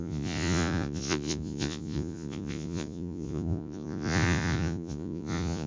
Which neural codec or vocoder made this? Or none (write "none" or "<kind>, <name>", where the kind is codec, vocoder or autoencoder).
vocoder, Vocos